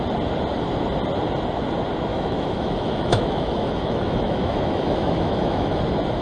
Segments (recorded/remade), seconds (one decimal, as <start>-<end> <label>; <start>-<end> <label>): 0.0-2.1 recorded; 2.1-5.8 remade; 5.8-6.2 recorded